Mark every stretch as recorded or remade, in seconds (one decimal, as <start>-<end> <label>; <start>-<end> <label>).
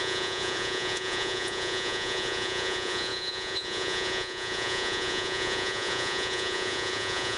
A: 0.0-7.4 remade